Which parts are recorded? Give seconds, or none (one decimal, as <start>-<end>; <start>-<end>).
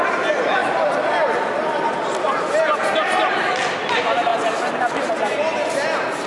0.0-0.6; 2.5-6.3